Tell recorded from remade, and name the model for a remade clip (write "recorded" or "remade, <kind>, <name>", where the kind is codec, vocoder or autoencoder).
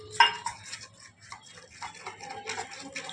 recorded